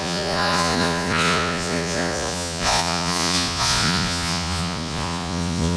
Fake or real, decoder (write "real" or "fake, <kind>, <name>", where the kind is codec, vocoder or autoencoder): fake, vocoder, Vocos